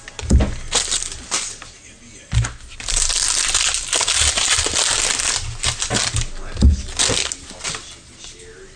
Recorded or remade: recorded